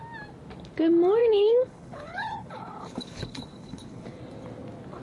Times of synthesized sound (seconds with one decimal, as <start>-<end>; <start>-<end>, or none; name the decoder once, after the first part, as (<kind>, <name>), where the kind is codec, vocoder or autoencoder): 1.2-4.2 (codec, HILCodec)